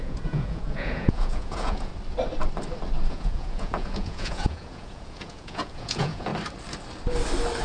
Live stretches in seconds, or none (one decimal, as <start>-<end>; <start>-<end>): 1.9-3.1; 6.3-7.6